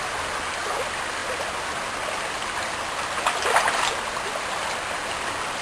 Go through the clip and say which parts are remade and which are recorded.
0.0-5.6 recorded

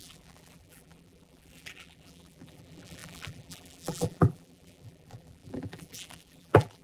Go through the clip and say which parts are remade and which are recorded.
0.0-6.8 remade

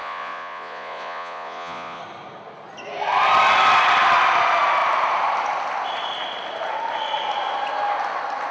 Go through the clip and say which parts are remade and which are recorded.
0.0-2.0 remade; 2.0-8.5 recorded

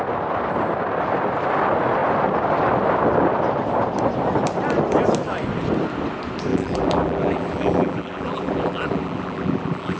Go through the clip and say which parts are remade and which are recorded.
0.0-6.5 recorded; 6.5-10.0 remade